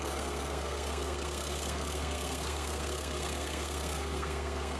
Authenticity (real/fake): fake